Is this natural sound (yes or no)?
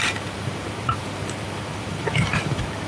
no